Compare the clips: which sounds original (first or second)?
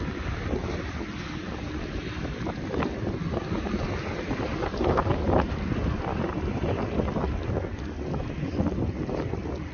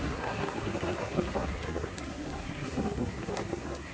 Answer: first